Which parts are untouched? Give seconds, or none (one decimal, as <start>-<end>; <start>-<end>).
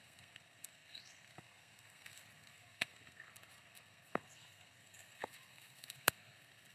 none